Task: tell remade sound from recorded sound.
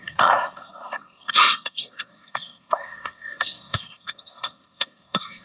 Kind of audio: remade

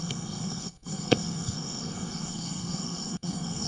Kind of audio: remade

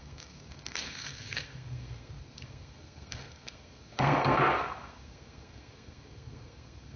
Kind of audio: remade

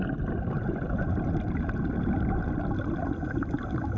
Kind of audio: recorded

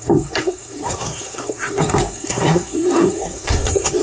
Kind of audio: remade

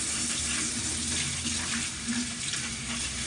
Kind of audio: recorded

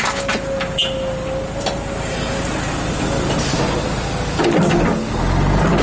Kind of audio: recorded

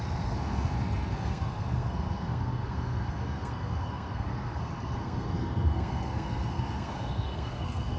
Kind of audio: remade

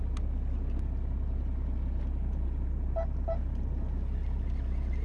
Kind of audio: recorded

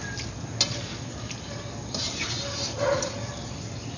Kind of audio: recorded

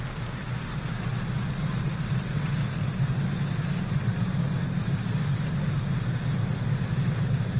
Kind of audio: recorded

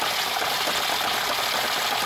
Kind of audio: recorded